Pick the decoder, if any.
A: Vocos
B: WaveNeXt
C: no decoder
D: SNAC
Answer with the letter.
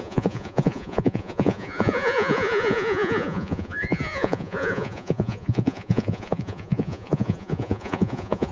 A